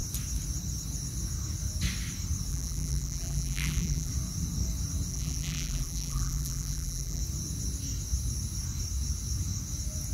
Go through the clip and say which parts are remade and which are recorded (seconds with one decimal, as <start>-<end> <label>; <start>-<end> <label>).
0.0-2.5 recorded; 2.5-4.1 remade; 4.1-5.1 recorded; 5.1-7.2 remade; 7.2-10.1 recorded